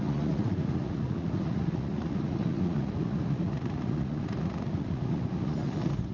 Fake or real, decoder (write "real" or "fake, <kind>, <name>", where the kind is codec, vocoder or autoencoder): fake, vocoder, Vocos